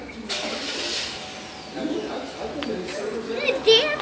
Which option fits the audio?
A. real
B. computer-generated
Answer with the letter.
A